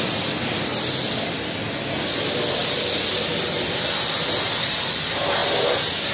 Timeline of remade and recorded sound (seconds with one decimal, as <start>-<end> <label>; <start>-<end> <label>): 0.0-6.1 recorded